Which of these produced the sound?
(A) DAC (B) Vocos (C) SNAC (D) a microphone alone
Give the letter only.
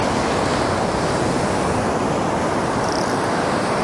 D